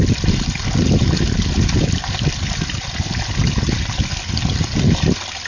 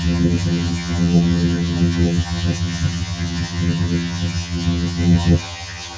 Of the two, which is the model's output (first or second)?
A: second